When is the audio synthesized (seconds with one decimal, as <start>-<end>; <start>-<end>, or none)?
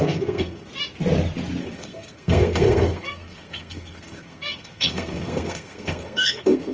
0.0-0.7; 1.6-6.7